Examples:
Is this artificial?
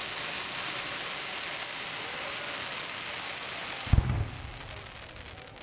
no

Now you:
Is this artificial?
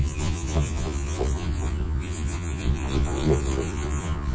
yes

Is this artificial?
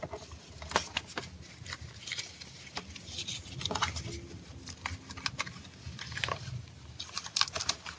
no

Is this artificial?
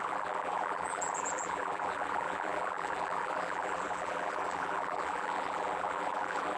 yes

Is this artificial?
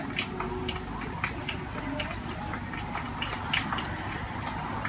no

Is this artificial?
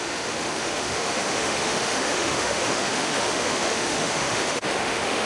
yes